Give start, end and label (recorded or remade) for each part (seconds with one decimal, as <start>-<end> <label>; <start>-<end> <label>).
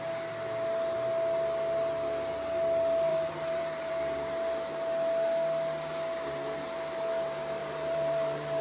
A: 0.0-3.1 recorded; 3.1-3.9 remade; 3.9-7.6 recorded; 7.6-8.6 remade